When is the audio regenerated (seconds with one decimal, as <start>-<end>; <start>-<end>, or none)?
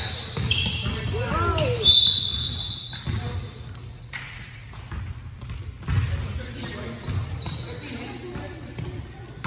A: 3.9-4.8